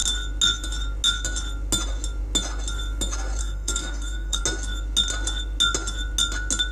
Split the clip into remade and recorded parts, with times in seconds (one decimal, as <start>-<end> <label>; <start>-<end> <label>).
0.0-3.4 recorded; 3.4-4.4 remade; 4.4-6.7 recorded